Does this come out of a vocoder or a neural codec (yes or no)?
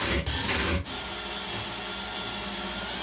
no